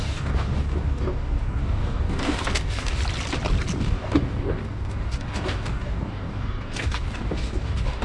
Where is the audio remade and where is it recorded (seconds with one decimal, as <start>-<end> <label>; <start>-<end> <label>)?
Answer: 0.0-3.0 remade; 3.0-3.8 recorded; 3.8-8.0 remade

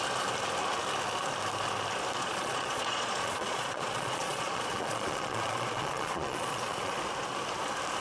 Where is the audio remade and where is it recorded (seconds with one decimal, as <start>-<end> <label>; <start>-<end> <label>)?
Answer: 0.0-2.2 recorded; 2.2-7.0 remade; 7.0-8.0 recorded

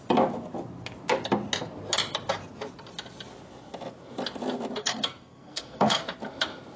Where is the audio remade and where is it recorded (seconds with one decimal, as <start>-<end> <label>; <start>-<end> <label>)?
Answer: 0.0-4.8 recorded; 4.8-6.0 remade; 6.0-6.8 recorded

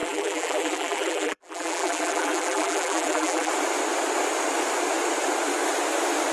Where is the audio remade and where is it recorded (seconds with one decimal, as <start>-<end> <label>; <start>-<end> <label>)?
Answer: 0.0-3.5 remade; 3.5-6.3 recorded

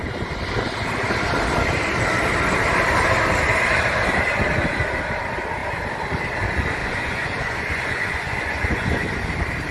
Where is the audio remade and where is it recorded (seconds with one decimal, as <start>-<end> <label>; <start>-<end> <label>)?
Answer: 0.0-6.8 recorded; 6.8-9.1 remade; 9.1-9.7 recorded

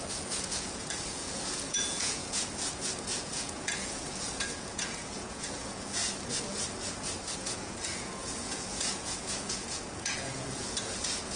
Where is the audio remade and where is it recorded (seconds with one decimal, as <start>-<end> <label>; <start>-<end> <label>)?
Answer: 0.0-6.0 remade; 6.0-7.3 recorded; 7.3-11.4 remade

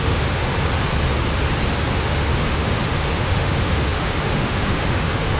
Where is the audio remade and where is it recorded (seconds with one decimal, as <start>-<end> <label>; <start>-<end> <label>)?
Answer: 0.0-0.5 remade; 0.5-1.9 recorded; 1.9-5.4 remade